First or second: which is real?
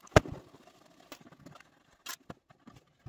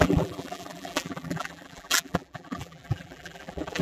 first